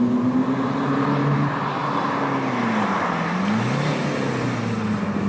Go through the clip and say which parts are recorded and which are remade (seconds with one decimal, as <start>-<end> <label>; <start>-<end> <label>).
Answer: 0.0-5.3 recorded